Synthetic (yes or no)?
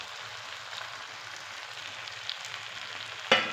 no